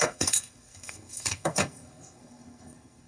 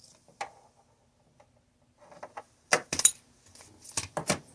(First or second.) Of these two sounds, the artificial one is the first